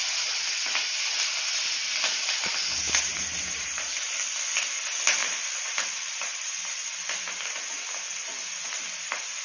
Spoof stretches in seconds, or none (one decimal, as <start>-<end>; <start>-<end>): 3.1-4.2; 5.2-6.5